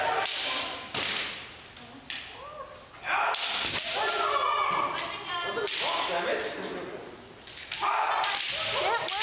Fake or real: real